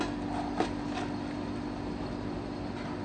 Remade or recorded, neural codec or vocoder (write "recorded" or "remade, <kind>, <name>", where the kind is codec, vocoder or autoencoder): recorded